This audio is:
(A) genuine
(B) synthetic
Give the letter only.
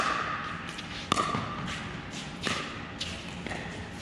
A